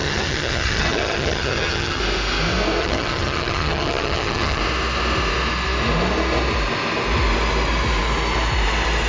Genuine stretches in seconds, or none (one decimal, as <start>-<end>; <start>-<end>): 2.0-2.8; 4.6-9.1